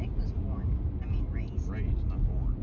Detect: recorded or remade recorded